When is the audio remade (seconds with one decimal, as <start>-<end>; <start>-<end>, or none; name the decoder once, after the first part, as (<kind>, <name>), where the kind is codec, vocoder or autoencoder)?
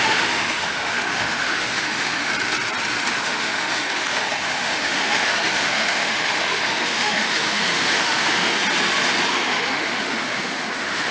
0.0-2.3 (autoencoder, DAC-VAE); 3.2-8.6; 9.3-11.1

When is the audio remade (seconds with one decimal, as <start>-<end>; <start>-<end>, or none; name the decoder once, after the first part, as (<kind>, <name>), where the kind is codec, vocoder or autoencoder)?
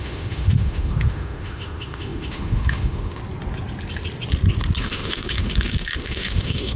0.0-3.2 (autoencoder, DAC-VAE); 4.8-6.8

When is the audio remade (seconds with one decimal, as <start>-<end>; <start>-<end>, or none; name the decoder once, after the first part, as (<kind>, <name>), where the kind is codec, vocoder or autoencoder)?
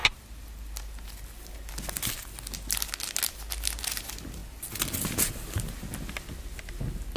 none